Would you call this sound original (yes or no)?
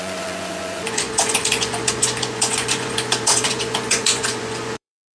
no